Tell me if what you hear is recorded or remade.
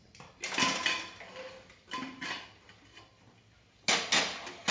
recorded